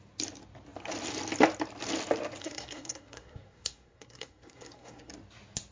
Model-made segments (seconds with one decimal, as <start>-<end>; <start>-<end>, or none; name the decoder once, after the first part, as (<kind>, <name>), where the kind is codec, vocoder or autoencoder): 2.4-5.1 (codec, SNAC)